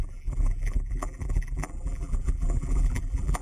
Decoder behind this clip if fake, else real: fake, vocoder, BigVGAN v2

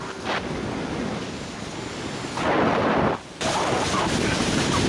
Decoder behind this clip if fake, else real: real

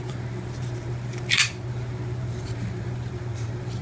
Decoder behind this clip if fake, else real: fake, vocoder, BigVGAN v2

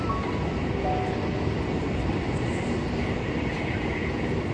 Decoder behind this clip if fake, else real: real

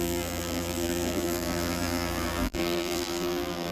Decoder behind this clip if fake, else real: fake, vocoder, BigVGAN v2